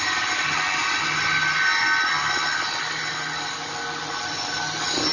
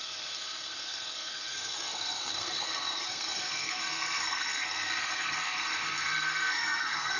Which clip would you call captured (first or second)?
first